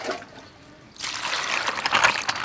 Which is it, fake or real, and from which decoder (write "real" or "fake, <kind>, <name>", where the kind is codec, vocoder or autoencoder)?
fake, vocoder, BigVGAN v2